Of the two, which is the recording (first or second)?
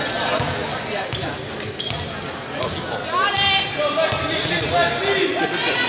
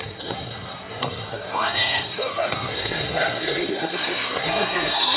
first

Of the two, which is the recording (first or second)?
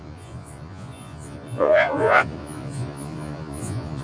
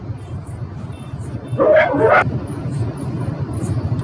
second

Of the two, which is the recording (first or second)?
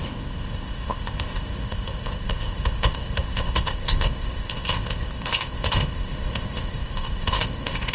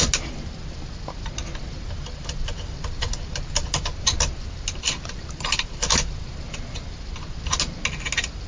second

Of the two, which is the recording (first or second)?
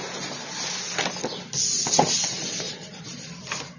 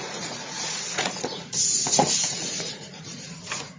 first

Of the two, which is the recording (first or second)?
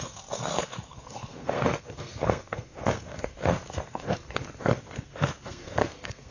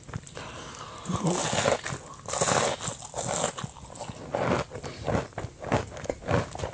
second